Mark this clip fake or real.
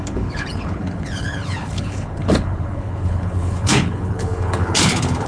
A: fake